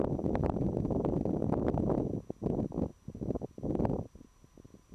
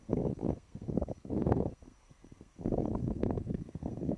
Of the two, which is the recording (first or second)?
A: first